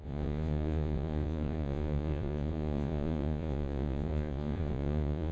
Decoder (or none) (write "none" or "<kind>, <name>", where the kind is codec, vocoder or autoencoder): vocoder, Vocos